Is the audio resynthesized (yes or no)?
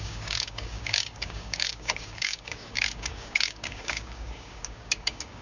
yes